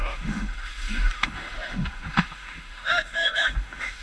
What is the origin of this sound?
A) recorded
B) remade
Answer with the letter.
B